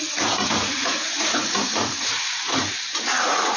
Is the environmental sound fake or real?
fake